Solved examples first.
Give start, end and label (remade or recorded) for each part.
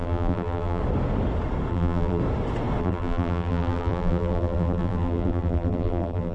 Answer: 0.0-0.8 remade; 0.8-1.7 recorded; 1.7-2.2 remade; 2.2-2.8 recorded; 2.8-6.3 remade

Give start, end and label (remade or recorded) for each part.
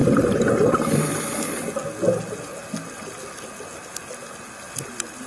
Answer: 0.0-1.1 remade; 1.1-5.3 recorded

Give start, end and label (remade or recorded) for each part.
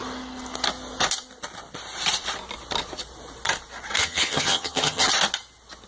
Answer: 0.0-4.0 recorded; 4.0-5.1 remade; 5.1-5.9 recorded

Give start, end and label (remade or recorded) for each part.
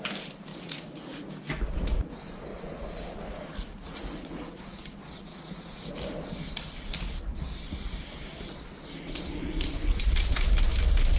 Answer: 0.0-0.5 recorded; 0.5-1.2 remade; 1.2-2.5 recorded; 2.5-4.8 remade; 4.8-5.3 recorded; 5.3-5.9 remade; 5.9-11.2 recorded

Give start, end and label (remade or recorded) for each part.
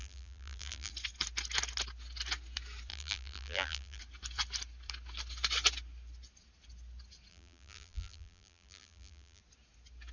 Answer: 0.0-0.9 remade; 0.9-2.9 recorded; 2.9-4.0 remade; 4.0-7.3 recorded; 7.3-9.4 remade; 9.4-10.1 recorded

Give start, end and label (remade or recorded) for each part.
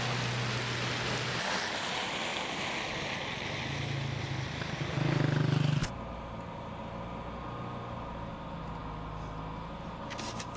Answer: 0.0-10.6 recorded